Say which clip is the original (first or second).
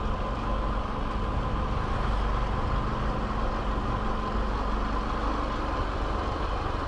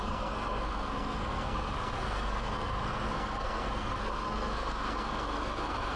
first